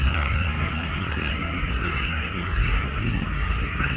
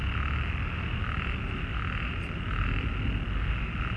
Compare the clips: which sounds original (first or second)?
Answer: second